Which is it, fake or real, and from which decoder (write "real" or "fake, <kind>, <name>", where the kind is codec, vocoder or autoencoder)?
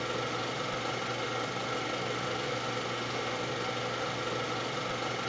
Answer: real